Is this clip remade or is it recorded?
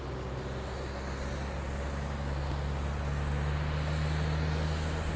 recorded